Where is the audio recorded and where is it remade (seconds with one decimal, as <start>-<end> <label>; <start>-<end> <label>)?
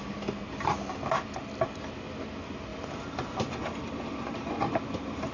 0.0-2.7 recorded; 2.7-5.3 remade